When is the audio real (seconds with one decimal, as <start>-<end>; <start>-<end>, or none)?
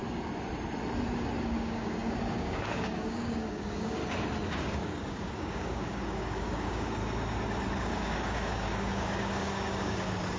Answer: 0.0-1.4; 4.0-4.5; 7.0-7.8